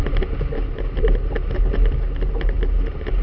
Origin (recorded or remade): recorded